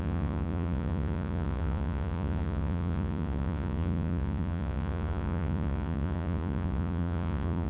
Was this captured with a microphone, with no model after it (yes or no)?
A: no